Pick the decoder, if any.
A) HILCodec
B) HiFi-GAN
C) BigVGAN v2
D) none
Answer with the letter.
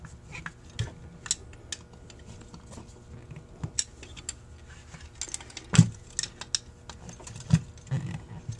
D